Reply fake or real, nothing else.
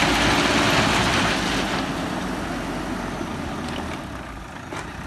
real